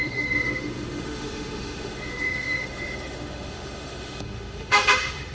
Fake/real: fake